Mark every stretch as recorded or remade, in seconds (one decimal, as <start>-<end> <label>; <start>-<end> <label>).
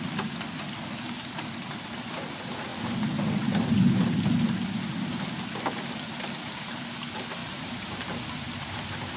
0.0-7.4 recorded; 7.4-8.0 remade; 8.0-9.2 recorded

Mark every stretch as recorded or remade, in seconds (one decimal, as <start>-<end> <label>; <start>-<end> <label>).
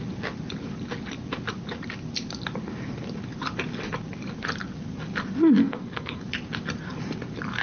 0.0-5.6 recorded; 5.6-6.2 remade; 6.2-7.6 recorded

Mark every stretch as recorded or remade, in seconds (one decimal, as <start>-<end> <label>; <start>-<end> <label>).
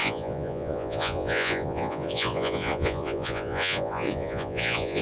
0.0-5.0 remade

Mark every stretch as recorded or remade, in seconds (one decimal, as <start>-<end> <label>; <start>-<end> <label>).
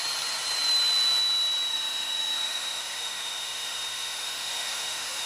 0.0-1.7 recorded; 1.7-5.3 remade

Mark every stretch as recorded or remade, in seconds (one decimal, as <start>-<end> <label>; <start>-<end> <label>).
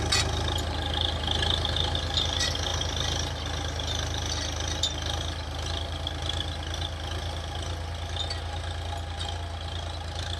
0.0-10.4 recorded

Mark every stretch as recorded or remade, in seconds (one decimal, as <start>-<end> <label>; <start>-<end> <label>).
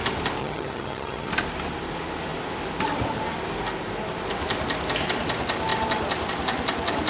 0.0-0.4 recorded; 0.4-1.3 remade; 1.3-7.1 recorded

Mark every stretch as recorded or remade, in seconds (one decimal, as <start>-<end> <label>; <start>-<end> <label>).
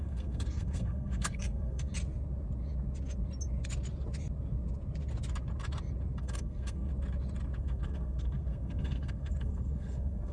0.0-1.9 remade; 1.9-6.2 recorded; 6.2-6.9 remade; 6.9-7.6 recorded; 7.6-10.3 remade